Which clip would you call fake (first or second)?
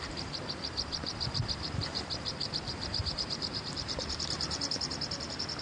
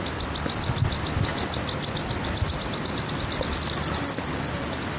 first